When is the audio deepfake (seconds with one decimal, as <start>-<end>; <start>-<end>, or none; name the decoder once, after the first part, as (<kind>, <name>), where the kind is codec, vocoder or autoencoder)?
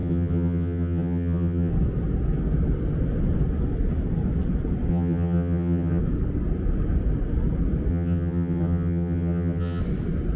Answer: 0.0-1.7 (vocoder, HiFi-GAN); 4.9-6.0; 7.9-9.8